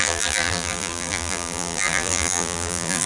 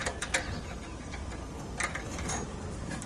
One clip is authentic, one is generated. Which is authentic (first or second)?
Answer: second